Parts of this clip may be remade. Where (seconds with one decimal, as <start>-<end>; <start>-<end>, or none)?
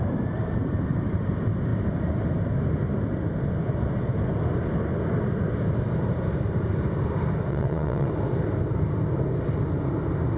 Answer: 7.5-8.1